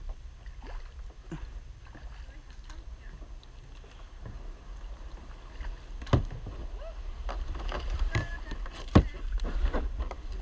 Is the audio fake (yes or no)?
no